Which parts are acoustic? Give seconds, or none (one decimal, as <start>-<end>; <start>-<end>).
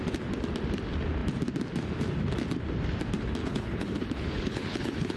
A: 0.0-3.4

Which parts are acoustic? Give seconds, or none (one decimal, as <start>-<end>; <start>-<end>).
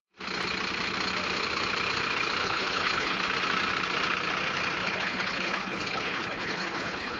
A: 0.0-2.4; 3.2-4.8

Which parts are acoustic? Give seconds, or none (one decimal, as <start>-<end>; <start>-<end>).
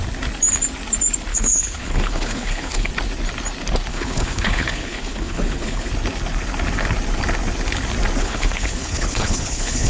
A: 0.0-1.3; 2.9-3.9; 5.9-8.2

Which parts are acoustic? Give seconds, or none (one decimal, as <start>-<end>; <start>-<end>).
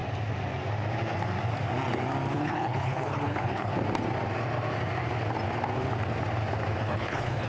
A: 0.0-2.3; 3.7-6.8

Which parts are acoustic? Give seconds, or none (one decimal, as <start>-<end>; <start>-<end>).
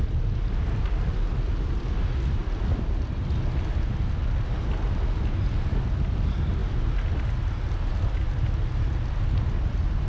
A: 0.0-10.1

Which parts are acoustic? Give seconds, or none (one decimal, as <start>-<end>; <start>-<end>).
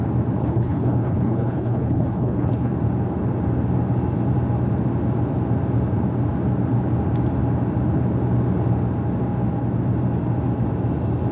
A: 0.0-0.4; 2.7-11.3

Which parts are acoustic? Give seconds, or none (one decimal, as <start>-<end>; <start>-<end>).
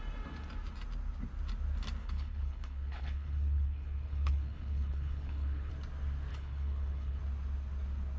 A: 0.0-2.0; 5.7-6.3; 7.2-8.2